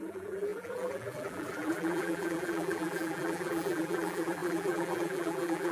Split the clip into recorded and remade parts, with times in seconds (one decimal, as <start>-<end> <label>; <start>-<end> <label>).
0.0-5.7 remade